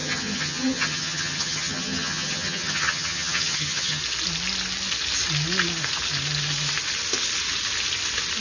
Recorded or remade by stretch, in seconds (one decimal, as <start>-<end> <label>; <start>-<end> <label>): 0.0-4.0 remade; 4.0-8.4 recorded